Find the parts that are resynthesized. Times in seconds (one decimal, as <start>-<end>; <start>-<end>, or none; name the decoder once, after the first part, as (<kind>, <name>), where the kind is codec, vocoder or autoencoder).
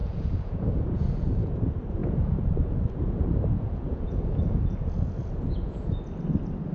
0.0-1.6 (vocoder, Vocos); 2.0-6.0